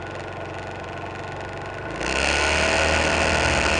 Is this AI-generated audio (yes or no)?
no